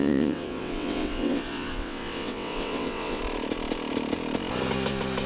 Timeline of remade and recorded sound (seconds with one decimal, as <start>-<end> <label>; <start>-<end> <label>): 0.0-3.2 remade; 3.2-5.3 recorded

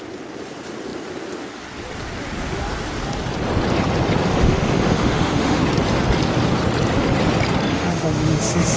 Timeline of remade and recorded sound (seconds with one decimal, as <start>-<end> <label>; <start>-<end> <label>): 0.0-4.3 recorded; 4.3-5.6 remade; 5.6-7.7 recorded; 7.7-8.8 remade

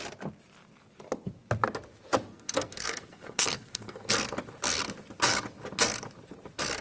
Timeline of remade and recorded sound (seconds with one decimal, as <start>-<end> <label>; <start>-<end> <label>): 0.0-2.3 recorded; 2.3-4.1 remade; 4.1-6.8 recorded

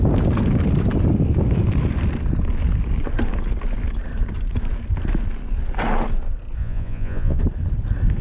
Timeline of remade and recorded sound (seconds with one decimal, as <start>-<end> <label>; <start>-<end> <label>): 0.0-6.6 recorded; 6.6-7.4 remade; 7.4-8.2 recorded

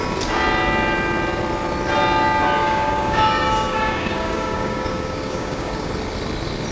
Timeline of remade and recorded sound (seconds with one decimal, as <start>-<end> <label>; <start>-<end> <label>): 0.0-2.6 recorded; 2.6-5.9 remade; 5.9-6.7 recorded